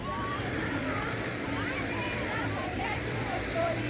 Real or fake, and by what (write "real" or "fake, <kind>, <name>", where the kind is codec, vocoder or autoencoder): fake, vocoder, BigVGAN v2